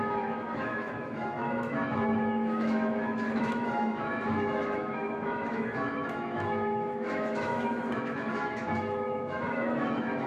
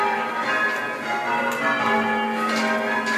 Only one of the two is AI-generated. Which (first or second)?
first